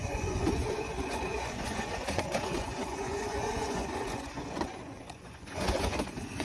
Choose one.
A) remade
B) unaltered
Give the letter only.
A